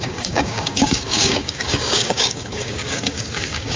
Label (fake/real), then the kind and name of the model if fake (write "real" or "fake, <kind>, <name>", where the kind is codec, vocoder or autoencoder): fake, codec, DAC